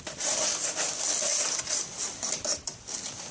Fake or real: real